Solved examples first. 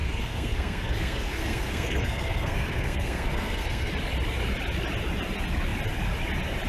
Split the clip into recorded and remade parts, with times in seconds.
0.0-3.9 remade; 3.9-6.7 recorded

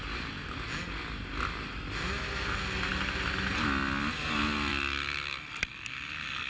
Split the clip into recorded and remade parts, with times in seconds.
0.0-6.5 recorded

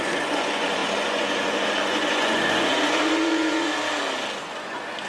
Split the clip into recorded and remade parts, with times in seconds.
0.0-3.8 remade; 3.8-4.4 recorded; 4.4-5.1 remade

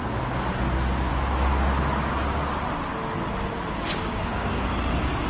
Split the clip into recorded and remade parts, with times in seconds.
0.0-4.0 recorded; 4.0-4.7 remade; 4.7-5.3 recorded

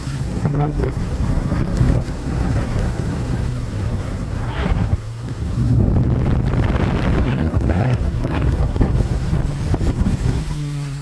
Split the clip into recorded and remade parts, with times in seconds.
0.0-5.9 remade; 5.9-7.2 recorded; 7.2-9.4 remade; 9.4-9.9 recorded; 9.9-11.0 remade

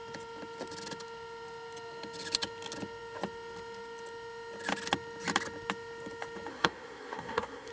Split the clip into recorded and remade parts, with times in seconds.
0.0-6.5 recorded; 6.5-7.7 remade